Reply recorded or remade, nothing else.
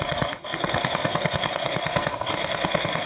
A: remade